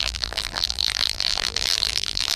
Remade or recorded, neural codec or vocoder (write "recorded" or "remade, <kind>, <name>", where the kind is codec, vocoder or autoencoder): remade, vocoder, BigVGAN v2